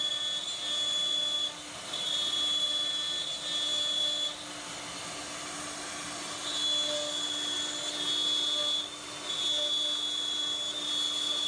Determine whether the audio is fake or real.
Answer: real